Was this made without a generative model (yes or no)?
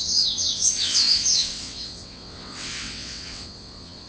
no